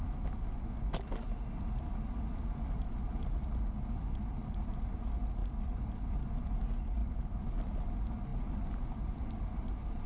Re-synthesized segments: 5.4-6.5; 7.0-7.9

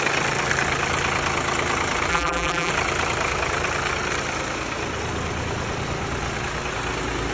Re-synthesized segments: 2.1-2.7

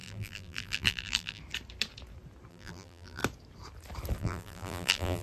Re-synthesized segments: 0.0-1.4; 2.5-3.2; 4.2-5.2

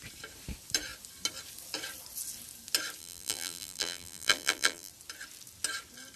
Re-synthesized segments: 3.0-4.9

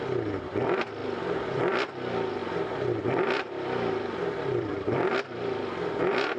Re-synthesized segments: 1.0-1.6; 2.4-6.0

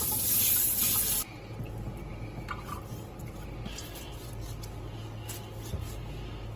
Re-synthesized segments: none